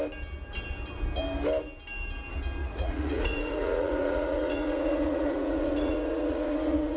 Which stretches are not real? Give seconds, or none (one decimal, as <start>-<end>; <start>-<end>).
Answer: 2.6-7.0